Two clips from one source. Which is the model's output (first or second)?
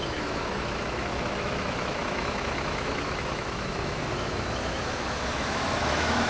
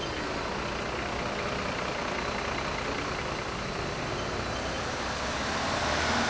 first